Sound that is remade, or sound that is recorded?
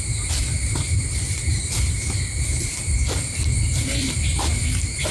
remade